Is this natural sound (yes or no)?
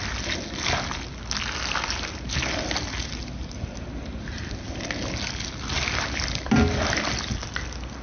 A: yes